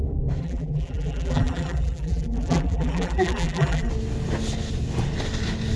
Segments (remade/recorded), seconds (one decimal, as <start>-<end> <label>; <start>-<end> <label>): 0.0-0.4 recorded; 0.4-3.9 remade; 3.9-5.8 recorded